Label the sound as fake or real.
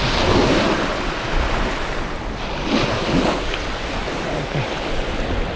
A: real